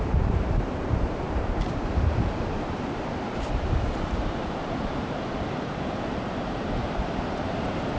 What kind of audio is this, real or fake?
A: fake